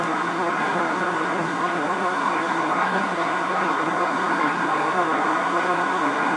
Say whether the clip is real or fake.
fake